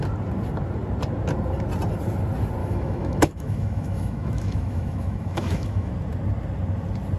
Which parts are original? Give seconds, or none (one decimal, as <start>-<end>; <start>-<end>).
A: 0.0-2.6; 5.9-7.2

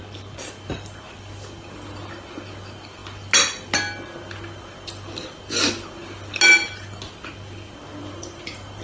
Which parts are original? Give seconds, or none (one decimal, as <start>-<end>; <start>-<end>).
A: 0.0-8.0

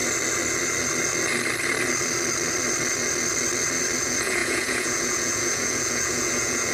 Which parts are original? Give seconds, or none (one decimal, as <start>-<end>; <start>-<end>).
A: 0.0-4.0

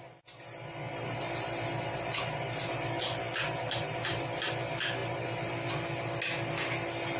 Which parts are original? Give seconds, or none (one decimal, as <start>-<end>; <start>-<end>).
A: 0.0-7.2

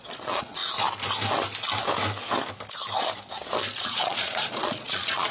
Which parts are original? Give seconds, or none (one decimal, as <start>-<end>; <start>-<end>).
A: 0.6-3.8

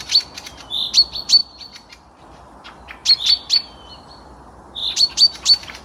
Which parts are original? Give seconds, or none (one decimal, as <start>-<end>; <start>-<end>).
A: 0.0-4.8

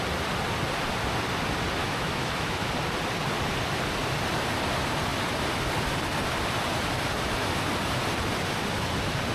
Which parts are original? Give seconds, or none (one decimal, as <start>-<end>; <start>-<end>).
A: 0.0-1.8; 2.7-9.3

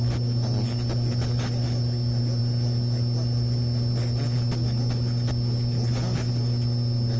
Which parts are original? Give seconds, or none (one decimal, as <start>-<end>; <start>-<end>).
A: 0.0-7.2